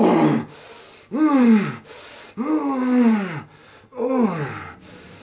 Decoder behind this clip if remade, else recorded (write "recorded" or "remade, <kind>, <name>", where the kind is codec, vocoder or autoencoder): recorded